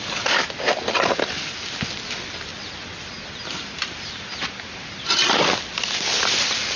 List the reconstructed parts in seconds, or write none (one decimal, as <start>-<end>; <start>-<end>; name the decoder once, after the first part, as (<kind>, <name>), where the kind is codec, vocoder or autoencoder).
none

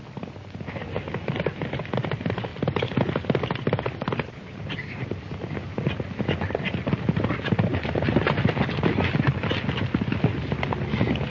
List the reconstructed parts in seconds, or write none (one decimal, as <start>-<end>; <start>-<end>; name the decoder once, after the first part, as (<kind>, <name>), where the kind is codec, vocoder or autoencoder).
2.5-5.1 (vocoder, BigVGAN v2)

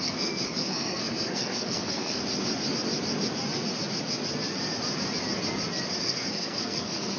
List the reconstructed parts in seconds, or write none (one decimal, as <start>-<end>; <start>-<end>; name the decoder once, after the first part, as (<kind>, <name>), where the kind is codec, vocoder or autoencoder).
0.0-2.2 (codec, SNAC); 6.0-7.2

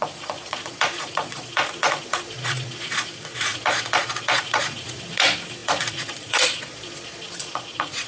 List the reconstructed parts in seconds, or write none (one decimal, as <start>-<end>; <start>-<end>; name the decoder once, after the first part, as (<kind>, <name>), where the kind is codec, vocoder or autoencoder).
0.0-8.1 (vocoder, Vocos)

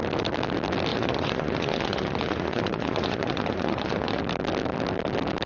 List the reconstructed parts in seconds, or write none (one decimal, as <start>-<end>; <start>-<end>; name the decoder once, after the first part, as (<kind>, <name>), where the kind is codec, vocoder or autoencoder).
0.9-4.2 (vocoder, Vocos)

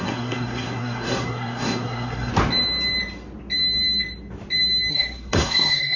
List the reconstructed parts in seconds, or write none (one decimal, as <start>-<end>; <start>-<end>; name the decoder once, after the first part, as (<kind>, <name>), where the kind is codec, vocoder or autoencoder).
0.0-2.3 (codec, SNAC); 4.9-6.0